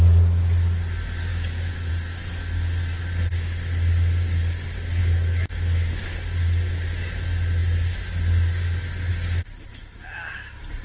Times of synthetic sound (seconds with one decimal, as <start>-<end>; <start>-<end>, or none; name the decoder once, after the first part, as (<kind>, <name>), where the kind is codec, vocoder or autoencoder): 1.3-1.9 (autoencoder, DAC-VAE); 5.0-5.9